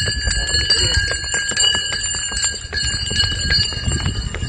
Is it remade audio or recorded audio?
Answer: recorded